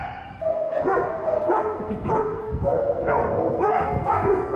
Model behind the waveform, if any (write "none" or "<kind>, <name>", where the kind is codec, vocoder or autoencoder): codec, SNAC